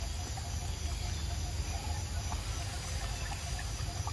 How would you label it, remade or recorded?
recorded